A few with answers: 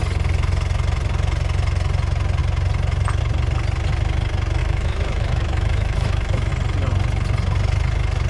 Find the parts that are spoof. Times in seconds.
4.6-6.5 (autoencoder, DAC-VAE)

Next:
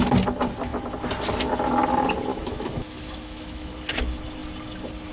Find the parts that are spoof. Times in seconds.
2.3-3.7 (autoencoder, DAC-VAE)

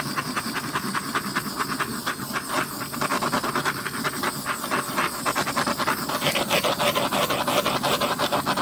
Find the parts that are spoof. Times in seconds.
none

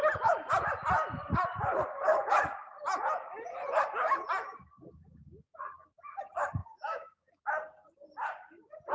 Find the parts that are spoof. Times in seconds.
6.6-7.4 (autoencoder, DAC-VAE)